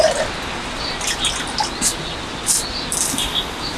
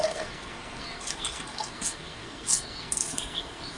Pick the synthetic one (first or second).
second